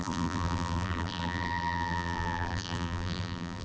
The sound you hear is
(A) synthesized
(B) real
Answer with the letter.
A